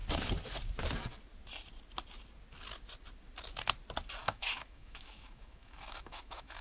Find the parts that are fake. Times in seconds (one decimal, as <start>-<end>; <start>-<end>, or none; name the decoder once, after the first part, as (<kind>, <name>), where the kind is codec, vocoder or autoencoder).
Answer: 4.2-6.6 (autoencoder, DAC-VAE)